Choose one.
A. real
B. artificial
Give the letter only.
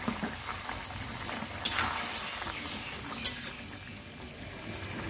A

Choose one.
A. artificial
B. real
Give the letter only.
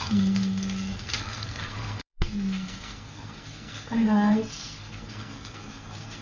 A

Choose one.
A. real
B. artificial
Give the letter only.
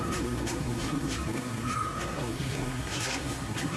B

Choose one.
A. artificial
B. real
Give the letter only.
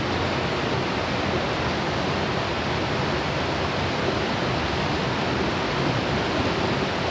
B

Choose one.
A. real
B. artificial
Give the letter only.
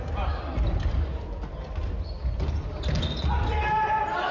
A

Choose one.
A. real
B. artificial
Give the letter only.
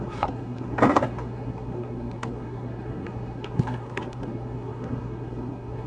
B